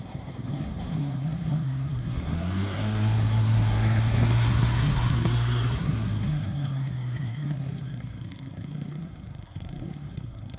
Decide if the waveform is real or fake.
fake